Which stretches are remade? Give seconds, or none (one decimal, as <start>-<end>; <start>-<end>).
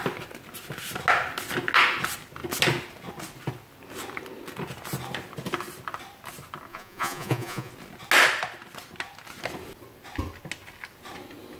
6.7-7.7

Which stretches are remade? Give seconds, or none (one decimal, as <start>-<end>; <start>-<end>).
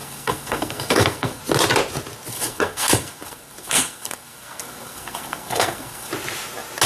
0.0-1.4; 2.3-6.1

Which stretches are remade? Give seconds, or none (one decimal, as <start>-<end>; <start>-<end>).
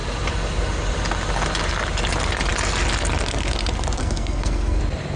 4.0-4.8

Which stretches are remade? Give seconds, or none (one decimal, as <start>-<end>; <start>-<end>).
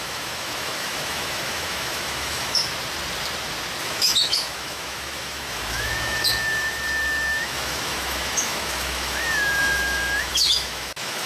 0.0-2.6; 3.8-11.3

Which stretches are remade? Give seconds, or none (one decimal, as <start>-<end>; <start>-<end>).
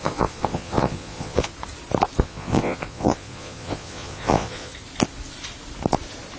0.0-1.5; 2.2-4.7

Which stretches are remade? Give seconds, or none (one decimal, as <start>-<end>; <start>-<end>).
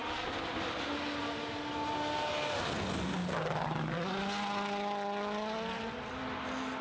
none